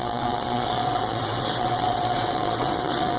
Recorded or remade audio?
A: remade